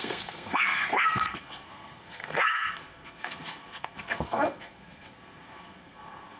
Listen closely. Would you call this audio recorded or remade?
remade